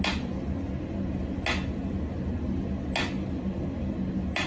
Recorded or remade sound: recorded